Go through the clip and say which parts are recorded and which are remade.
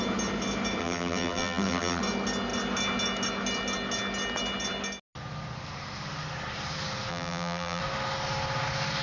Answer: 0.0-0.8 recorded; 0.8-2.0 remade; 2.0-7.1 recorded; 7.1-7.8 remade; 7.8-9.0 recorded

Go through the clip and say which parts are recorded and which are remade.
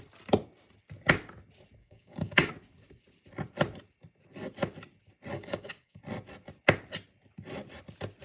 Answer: 0.0-1.8 recorded; 1.8-2.5 remade; 2.5-5.3 recorded; 5.3-6.0 remade; 6.0-8.2 recorded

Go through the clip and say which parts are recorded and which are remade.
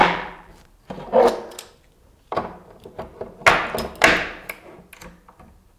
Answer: 0.0-0.5 remade; 0.5-5.8 recorded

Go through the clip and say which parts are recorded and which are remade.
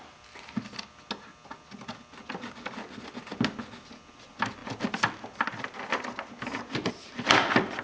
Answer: 0.0-7.8 recorded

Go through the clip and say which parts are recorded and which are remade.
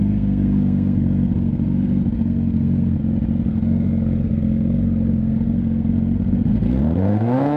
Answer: 0.0-3.0 remade; 3.0-3.5 recorded; 3.5-7.6 remade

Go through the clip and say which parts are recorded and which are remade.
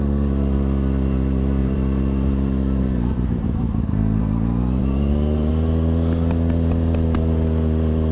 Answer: 0.0-1.6 recorded; 1.6-4.2 remade; 4.2-4.8 recorded; 4.8-5.5 remade; 5.5-8.1 recorded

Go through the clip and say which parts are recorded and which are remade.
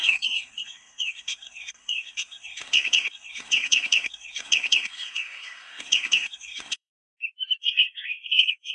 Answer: 0.0-6.9 remade; 6.9-7.6 recorded; 7.6-8.7 remade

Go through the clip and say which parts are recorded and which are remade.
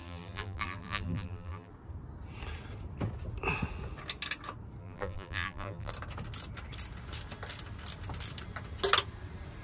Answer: 0.0-1.7 remade; 1.7-4.8 recorded; 4.8-5.9 remade; 5.9-9.6 recorded